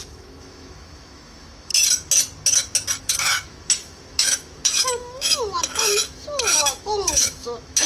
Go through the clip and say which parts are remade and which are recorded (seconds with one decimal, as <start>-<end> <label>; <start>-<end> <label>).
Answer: 0.0-1.7 remade; 1.7-3.0 recorded; 3.0-7.9 remade